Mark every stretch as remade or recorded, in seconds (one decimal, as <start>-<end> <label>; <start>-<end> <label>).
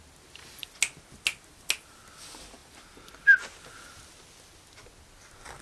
0.0-5.6 recorded